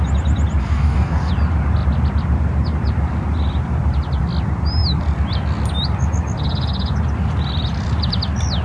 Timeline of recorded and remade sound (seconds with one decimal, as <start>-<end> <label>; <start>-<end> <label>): 0.0-0.6 recorded; 0.6-1.3 remade; 1.3-8.6 recorded